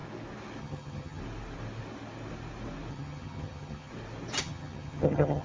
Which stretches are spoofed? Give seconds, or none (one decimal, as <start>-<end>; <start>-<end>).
0.6-1.2; 2.9-3.9; 4.4-5.4